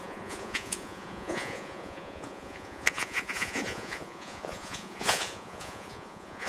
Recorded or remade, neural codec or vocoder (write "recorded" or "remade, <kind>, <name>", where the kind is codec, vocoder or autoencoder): remade, vocoder, Vocos